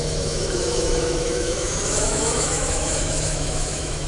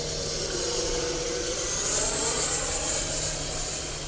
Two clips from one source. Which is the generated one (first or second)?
first